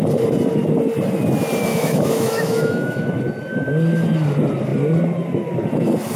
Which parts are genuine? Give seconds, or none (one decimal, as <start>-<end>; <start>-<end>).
0.0-1.7; 3.2-6.2